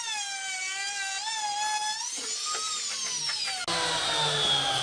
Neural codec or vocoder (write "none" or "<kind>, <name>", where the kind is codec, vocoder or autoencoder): none